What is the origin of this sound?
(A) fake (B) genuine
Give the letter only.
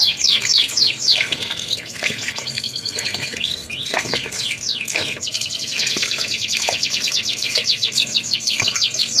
A